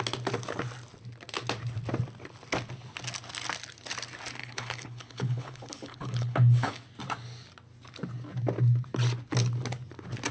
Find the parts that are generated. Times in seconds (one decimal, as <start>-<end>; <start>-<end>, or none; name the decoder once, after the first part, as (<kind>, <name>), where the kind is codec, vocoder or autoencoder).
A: 4.4-6.8 (codec, HILCodec)